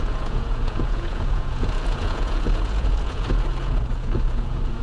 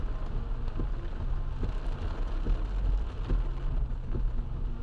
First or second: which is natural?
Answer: second